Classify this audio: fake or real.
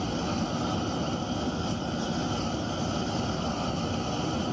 real